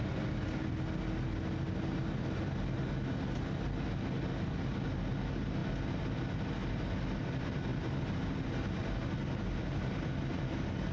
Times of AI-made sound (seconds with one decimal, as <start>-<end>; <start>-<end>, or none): none